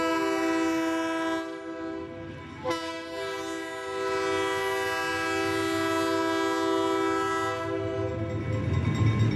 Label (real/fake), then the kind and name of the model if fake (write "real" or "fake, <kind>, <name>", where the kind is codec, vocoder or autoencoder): real